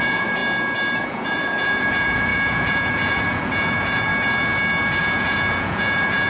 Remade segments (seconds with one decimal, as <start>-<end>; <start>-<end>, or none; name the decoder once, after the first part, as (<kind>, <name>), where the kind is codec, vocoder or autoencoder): 0.0-0.4 (vocoder, Vocos); 1.0-4.1; 5.0-6.3